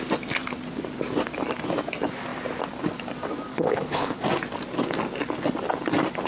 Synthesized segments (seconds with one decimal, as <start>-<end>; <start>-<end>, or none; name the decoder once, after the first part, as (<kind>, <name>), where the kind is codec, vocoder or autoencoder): 3.5-4.2 (codec, HILCodec)